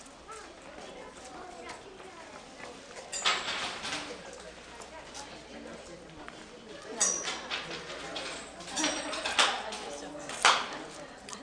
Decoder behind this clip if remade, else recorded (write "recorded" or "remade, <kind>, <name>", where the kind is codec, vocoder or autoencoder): recorded